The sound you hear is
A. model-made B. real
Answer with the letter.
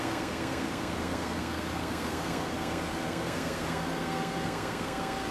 A